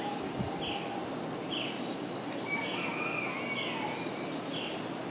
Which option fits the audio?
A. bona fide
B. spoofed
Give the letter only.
A